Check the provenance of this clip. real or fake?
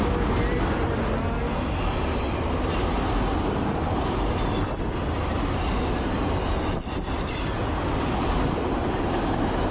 real